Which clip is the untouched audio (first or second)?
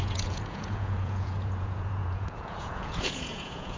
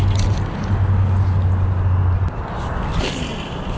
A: second